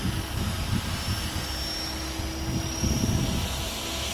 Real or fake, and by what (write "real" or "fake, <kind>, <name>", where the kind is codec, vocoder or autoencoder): real